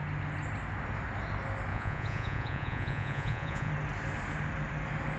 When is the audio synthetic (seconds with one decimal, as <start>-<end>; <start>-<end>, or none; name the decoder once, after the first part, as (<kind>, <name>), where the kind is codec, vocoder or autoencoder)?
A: 1.7-3.7 (vocoder, Vocos)